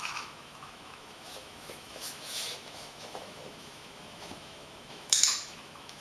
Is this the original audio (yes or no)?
no